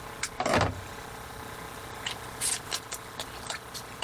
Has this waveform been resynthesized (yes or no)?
no